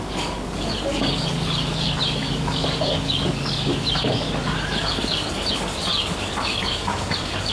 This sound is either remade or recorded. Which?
remade